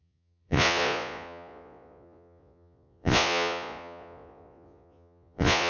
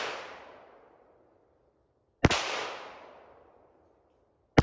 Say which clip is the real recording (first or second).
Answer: second